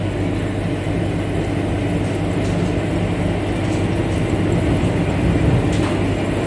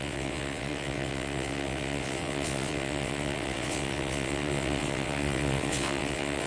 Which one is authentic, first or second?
first